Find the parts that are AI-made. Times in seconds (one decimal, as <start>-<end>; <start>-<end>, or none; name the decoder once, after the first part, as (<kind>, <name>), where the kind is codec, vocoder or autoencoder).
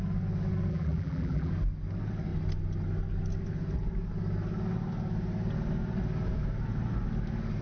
0.7-1.5 (vocoder, BigVGAN v2)